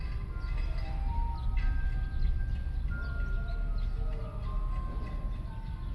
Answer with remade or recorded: recorded